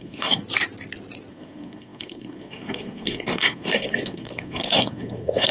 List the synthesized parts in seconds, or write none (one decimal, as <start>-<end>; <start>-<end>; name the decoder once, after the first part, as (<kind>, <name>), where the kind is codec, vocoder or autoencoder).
0.0-0.4 (codec, SNAC); 1.3-5.5